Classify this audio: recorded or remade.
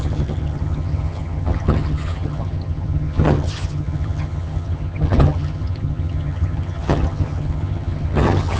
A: remade